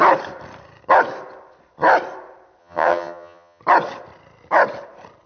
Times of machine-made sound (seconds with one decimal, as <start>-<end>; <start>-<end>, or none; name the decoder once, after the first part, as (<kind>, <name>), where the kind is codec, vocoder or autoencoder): 2.6-3.6 (vocoder, HiFi-GAN)